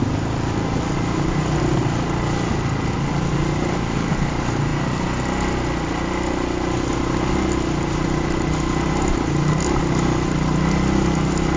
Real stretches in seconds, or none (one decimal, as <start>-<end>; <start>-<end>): 0.0-11.6